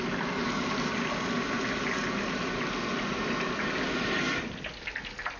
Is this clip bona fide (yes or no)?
yes